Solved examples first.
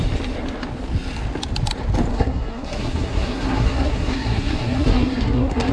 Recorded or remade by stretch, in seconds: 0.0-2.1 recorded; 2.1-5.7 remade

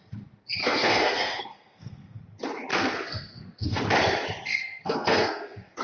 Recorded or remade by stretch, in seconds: 0.0-0.6 recorded; 0.6-2.2 remade; 2.2-2.7 recorded; 2.7-3.8 remade; 3.8-4.5 recorded; 4.5-5.8 remade